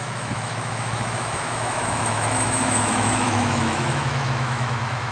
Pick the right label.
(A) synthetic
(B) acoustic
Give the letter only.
A